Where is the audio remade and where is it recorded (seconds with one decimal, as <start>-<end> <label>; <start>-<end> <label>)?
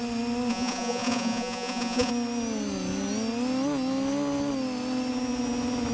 0.0-0.5 recorded; 0.5-2.1 remade; 2.1-5.9 recorded